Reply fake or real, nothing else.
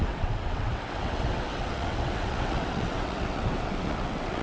fake